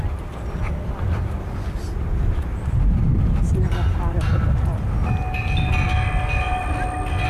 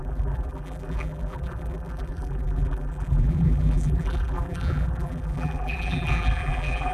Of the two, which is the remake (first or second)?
second